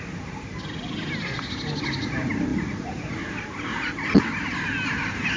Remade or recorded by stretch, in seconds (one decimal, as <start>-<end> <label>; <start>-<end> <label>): 0.0-2.5 recorded; 2.5-3.1 remade; 3.1-3.7 recorded; 3.7-4.3 remade; 4.3-5.4 recorded